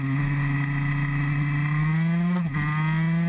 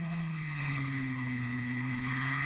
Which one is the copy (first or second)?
second